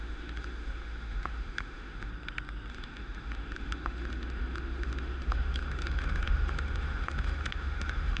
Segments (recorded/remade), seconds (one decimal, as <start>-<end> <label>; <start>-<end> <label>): 0.0-2.1 remade; 2.1-2.7 recorded; 2.7-8.2 remade